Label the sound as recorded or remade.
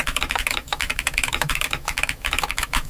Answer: remade